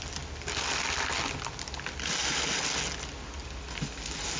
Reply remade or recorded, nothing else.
recorded